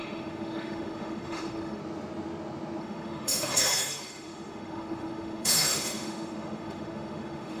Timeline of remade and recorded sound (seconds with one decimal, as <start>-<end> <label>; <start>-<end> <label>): 0.0-1.8 remade; 1.8-2.8 recorded; 2.8-7.6 remade